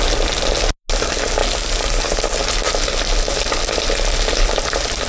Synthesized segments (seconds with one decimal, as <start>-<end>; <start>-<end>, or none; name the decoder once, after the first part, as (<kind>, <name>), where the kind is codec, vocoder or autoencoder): none